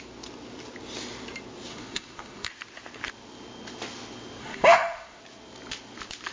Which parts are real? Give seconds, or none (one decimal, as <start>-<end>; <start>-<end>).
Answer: 0.0-1.7; 2.5-4.4; 5.2-6.3